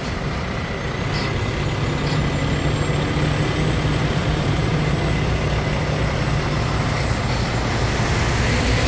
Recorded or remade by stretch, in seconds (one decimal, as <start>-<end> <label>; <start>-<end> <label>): 0.0-4.2 recorded; 4.2-4.9 remade; 4.9-8.9 recorded